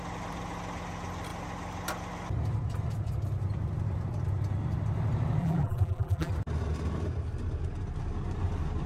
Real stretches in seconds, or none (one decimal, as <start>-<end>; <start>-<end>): 0.0-5.4; 6.3-8.9